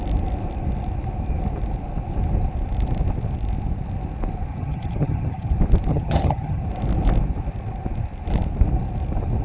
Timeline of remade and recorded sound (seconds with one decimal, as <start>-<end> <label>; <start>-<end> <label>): 0.0-4.5 recorded; 4.5-5.5 remade; 5.5-5.9 recorded; 5.9-6.6 remade; 6.6-9.4 recorded

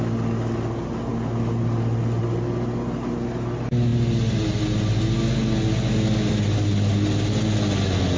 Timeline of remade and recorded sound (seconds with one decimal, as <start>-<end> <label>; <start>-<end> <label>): 0.0-8.2 recorded

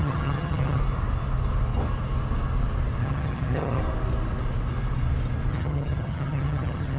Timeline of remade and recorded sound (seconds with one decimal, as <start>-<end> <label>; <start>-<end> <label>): 0.0-0.8 remade; 0.8-3.0 recorded; 3.0-3.8 remade; 3.8-5.5 recorded; 5.5-7.0 remade

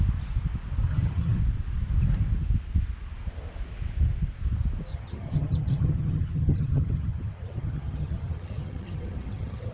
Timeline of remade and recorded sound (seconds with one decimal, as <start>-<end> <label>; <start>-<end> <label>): 0.0-0.9 recorded; 0.9-1.4 remade; 1.4-4.9 recorded; 4.9-9.7 remade

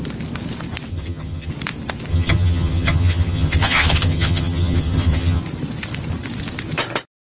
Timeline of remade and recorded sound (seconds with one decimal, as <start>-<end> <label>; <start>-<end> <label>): 0.0-0.9 recorded; 0.9-1.5 remade; 1.5-2.1 recorded; 2.1-5.4 remade; 5.4-7.3 recorded